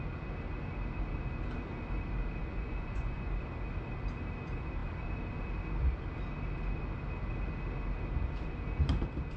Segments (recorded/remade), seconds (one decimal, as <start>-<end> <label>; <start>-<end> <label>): 0.0-2.4 recorded; 2.4-3.3 remade; 3.3-9.4 recorded